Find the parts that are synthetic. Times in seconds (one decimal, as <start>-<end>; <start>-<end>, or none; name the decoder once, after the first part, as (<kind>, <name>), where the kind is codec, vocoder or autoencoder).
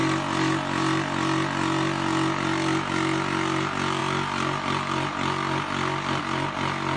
none